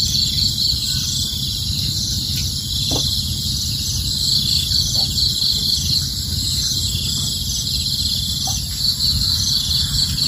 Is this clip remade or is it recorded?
recorded